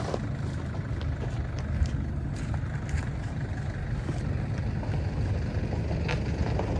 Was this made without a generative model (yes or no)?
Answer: yes